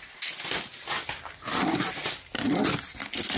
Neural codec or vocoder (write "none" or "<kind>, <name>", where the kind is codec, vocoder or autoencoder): none